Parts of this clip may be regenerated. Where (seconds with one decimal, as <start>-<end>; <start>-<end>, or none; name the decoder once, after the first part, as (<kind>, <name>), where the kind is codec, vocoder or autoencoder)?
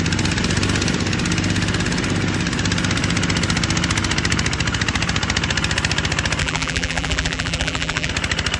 6.4-8.1 (vocoder, BigVGAN v2)